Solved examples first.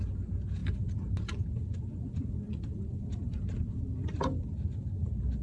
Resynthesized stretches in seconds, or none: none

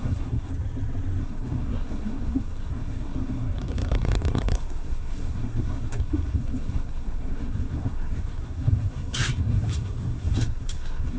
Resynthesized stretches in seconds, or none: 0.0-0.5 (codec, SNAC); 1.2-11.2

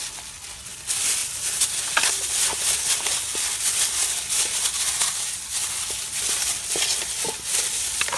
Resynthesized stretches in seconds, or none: none